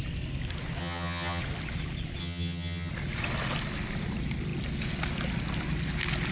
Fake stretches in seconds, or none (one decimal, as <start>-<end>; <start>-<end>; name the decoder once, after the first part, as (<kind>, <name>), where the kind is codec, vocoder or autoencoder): 0.8-1.4 (vocoder, HiFi-GAN); 2.2-2.9

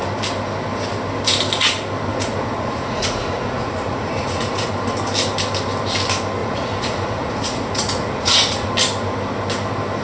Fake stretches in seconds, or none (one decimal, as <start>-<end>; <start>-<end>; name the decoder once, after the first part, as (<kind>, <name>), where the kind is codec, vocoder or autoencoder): 2.1-4.7 (vocoder, Vocos); 6.4-8.7

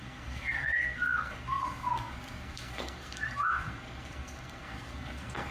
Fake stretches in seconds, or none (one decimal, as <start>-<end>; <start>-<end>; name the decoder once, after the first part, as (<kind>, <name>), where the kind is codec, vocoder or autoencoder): 0.0-5.5 (codec, SNAC)

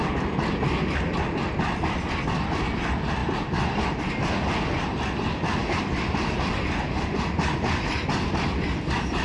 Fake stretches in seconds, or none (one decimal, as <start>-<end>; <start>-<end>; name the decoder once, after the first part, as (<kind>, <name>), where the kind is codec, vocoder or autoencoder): 5.6-6.6 (vocoder, BigVGAN v2)

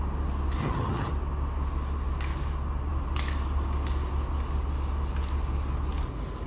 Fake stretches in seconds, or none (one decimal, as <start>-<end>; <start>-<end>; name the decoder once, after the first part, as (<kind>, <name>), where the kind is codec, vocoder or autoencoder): 0.6-1.1 (vocoder, HiFi-GAN)

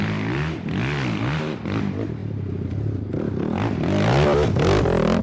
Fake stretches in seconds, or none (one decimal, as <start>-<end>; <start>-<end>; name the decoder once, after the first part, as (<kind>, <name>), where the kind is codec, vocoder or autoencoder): none